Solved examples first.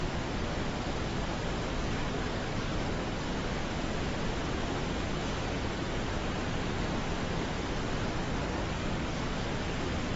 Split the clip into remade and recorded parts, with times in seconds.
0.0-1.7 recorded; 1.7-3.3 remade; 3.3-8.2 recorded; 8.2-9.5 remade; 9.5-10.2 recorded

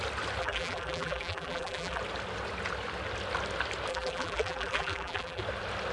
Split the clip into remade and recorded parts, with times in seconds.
0.0-0.4 recorded; 0.4-2.0 remade; 2.0-3.9 recorded; 3.9-5.4 remade; 5.4-5.9 recorded

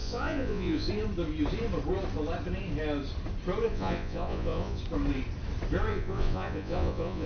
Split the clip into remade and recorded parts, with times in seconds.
0.0-0.9 remade; 0.9-3.7 recorded; 3.7-4.8 remade; 4.8-5.9 recorded; 5.9-7.3 remade

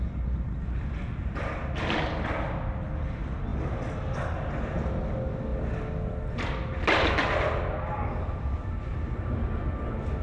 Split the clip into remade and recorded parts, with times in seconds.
0.0-10.2 recorded